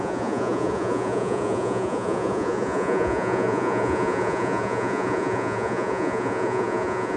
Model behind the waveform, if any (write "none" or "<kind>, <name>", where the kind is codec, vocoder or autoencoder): vocoder, Vocos